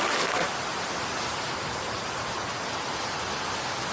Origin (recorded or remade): recorded